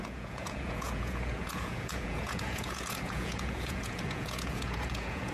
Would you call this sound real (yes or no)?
no